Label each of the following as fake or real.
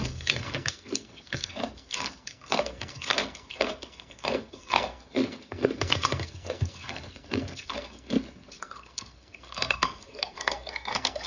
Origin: fake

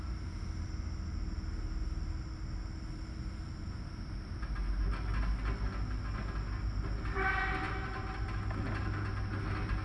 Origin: real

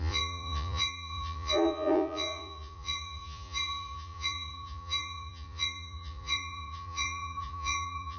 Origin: fake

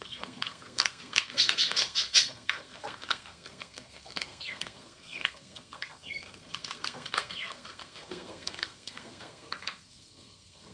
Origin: fake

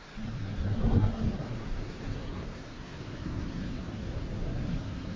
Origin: fake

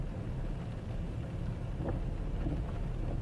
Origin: real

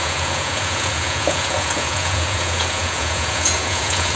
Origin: fake